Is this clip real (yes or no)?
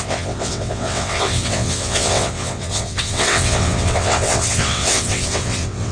no